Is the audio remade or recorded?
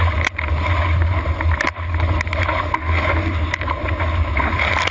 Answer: recorded